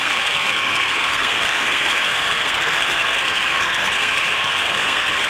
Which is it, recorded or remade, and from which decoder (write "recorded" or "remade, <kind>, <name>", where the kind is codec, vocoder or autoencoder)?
remade, codec, SNAC